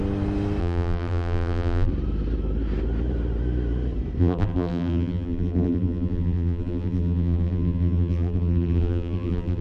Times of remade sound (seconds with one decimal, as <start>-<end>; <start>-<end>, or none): 0.6-1.9; 4.2-9.6